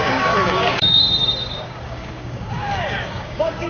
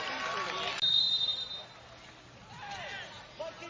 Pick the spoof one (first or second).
first